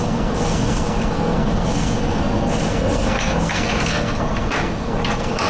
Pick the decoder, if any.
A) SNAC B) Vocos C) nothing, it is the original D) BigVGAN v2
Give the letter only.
A